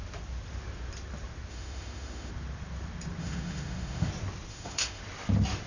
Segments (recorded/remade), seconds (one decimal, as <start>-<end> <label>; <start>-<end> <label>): 0.0-1.5 recorded; 1.5-2.3 remade; 2.3-3.2 recorded; 3.2-4.1 remade; 4.1-4.5 recorded; 4.5-5.0 remade; 5.0-5.7 recorded